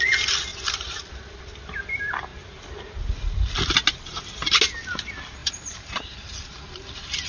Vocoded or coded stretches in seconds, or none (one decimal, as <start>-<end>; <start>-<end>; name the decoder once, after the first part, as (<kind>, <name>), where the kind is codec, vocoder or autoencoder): 0.5-1.1 (vocoder, BigVGAN v2); 5.4-7.3